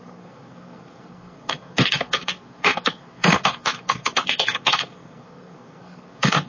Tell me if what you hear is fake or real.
fake